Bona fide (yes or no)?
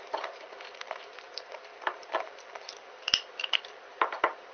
no